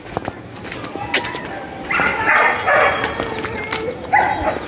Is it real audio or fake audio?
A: real